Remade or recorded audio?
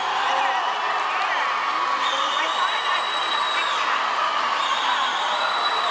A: recorded